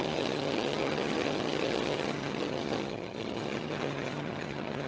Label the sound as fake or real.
fake